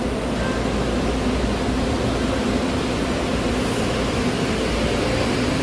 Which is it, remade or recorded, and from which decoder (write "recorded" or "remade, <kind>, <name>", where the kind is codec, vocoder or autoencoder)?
recorded